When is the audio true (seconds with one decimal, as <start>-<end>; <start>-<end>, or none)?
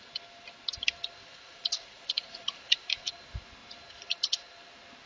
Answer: 0.0-1.2; 3.1-5.1